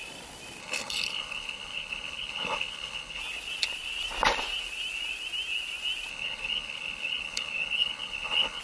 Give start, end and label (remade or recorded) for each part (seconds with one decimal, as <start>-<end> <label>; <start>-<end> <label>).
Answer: 0.0-0.6 recorded; 0.6-3.2 remade; 3.2-6.1 recorded; 6.1-8.6 remade

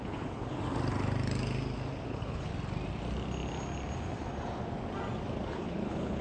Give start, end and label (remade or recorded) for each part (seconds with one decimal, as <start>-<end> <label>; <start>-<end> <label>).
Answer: 0.0-0.6 remade; 0.6-2.1 recorded; 2.1-2.5 remade; 2.5-5.5 recorded; 5.5-6.2 remade

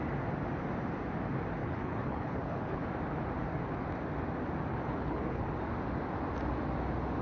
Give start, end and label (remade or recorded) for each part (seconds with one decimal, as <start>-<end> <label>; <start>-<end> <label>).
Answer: 0.0-1.6 recorded; 1.6-2.8 remade; 2.8-4.7 recorded; 4.7-5.5 remade; 5.5-7.2 recorded

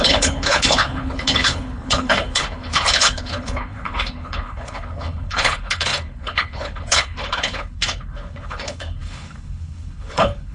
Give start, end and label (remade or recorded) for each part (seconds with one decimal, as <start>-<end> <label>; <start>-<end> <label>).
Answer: 0.0-10.5 remade

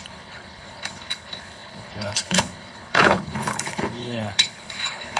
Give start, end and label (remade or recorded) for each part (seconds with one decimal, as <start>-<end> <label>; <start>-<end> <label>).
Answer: 0.0-5.2 remade